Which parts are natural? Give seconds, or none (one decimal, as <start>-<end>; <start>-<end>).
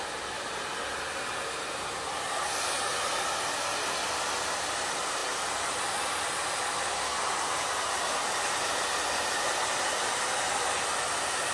0.0-11.5